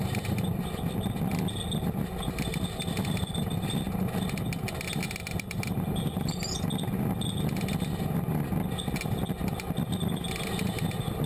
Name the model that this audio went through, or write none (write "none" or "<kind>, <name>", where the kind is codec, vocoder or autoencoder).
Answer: none